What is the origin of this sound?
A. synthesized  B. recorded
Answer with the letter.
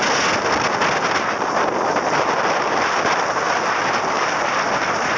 B